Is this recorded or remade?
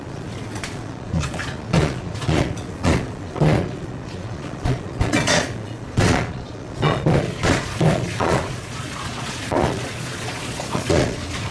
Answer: remade